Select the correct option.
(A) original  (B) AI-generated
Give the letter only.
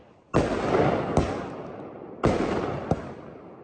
A